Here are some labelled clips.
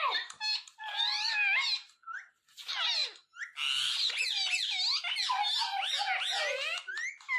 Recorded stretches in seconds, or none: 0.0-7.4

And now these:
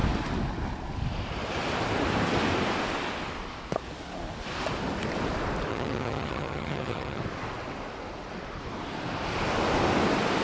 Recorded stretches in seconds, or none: 0.0-5.7; 7.2-10.4

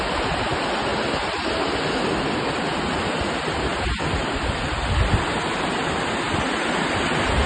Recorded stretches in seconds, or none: 0.0-7.5